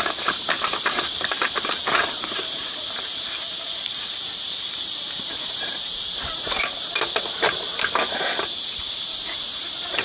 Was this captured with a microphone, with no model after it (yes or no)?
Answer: no